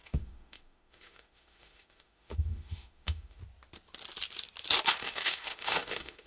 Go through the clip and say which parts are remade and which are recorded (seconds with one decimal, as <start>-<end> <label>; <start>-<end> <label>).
0.0-3.4 remade; 3.4-4.9 recorded; 4.9-6.3 remade